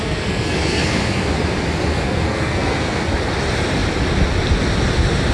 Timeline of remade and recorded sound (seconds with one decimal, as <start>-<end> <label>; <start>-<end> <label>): 0.0-1.4 remade; 1.4-1.9 recorded; 1.9-3.1 remade; 3.1-5.3 recorded

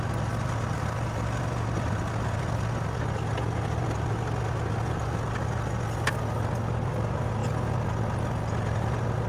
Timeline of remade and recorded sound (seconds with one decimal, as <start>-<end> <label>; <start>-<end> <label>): 0.0-9.3 recorded

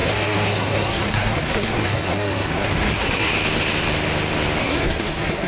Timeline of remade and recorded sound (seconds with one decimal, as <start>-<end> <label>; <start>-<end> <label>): 0.0-3.3 remade; 3.3-4.6 recorded; 4.6-5.5 remade

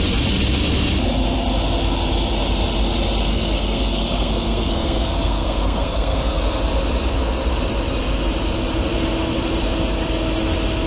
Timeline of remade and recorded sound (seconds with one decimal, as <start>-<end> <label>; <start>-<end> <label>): 0.0-3.3 recorded; 3.3-6.4 remade; 6.4-10.9 recorded